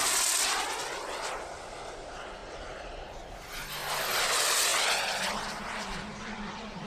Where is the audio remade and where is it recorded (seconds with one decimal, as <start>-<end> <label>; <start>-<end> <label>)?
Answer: 0.0-6.9 recorded